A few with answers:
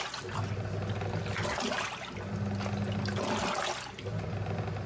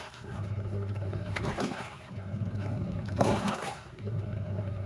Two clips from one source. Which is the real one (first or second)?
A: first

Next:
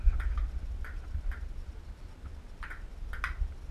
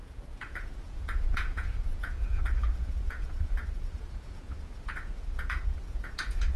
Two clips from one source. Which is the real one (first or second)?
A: first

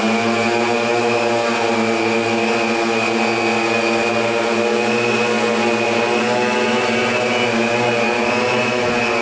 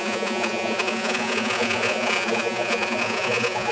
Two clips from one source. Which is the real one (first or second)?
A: first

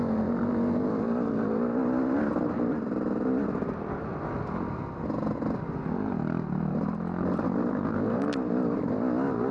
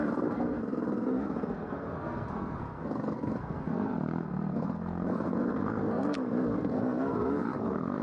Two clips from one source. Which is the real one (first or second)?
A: first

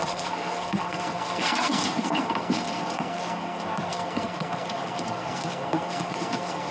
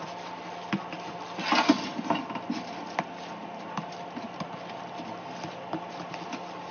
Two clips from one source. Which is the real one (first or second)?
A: second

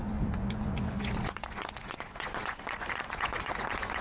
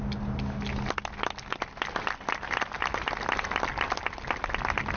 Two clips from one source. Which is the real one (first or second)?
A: second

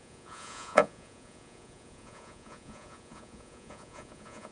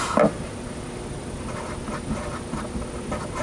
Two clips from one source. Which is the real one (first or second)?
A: second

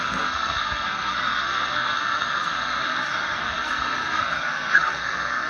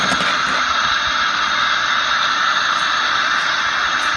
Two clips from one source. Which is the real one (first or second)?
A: second